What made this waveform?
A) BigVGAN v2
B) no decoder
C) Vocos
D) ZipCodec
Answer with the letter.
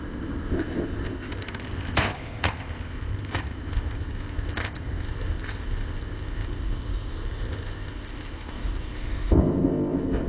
D